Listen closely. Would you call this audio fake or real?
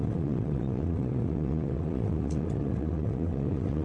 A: fake